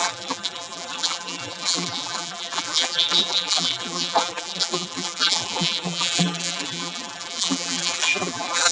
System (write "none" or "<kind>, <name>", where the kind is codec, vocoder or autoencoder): vocoder, BigVGAN v2